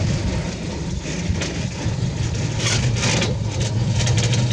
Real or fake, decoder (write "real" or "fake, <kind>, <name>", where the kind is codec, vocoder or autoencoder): real